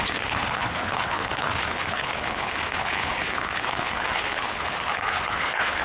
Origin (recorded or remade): remade